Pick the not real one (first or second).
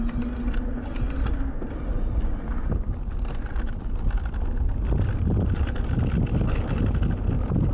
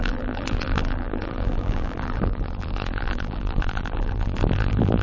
second